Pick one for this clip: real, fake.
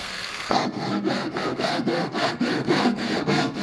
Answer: fake